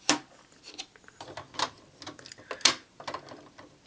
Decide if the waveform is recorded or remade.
recorded